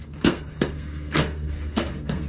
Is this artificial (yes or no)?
yes